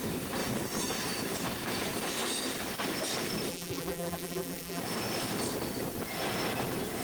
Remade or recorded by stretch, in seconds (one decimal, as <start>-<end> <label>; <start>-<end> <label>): 0.0-3.5 recorded; 3.5-4.8 remade; 4.8-7.0 recorded